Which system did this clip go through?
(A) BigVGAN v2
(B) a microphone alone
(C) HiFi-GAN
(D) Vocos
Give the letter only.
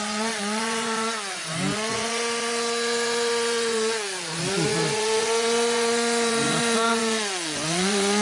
D